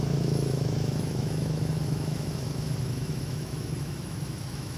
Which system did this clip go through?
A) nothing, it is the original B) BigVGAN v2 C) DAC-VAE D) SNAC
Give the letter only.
C